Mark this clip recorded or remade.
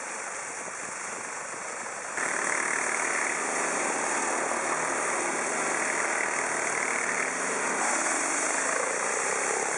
recorded